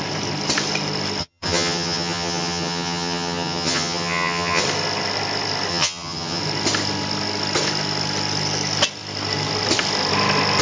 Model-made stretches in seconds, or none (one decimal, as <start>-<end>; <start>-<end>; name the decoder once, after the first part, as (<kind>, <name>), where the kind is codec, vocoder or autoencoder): 1.2-4.6 (vocoder, HiFi-GAN); 5.7-6.4